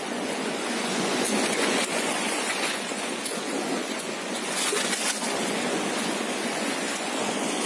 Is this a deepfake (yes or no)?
yes